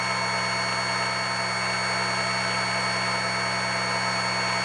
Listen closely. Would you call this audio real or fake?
real